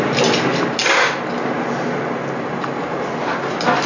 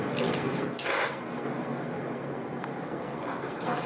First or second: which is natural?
first